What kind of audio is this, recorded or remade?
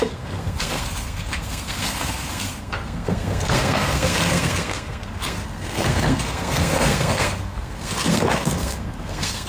remade